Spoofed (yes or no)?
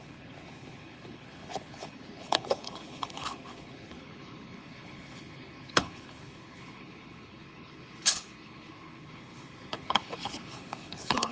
yes